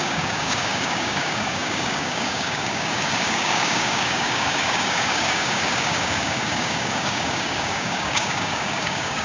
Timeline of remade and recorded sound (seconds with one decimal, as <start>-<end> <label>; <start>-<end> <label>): 0.0-9.2 remade